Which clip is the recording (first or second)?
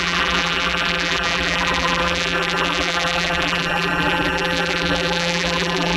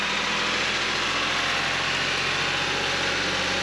second